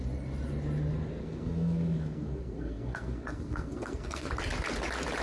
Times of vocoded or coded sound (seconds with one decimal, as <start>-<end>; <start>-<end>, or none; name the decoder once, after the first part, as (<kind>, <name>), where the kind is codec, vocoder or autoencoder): 1.2-4.3 (codec, SNAC)